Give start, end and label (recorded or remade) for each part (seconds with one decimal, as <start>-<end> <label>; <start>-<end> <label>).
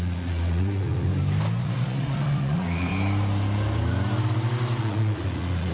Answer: 0.0-1.1 remade; 1.1-1.6 recorded; 1.6-2.9 remade; 2.9-4.8 recorded; 4.8-5.7 remade